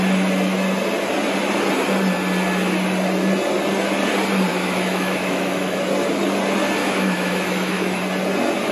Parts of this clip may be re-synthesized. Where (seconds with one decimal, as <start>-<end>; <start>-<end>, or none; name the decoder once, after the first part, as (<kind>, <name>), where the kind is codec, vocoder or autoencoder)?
4.5-5.8 (autoencoder, DAC-VAE); 6.8-8.0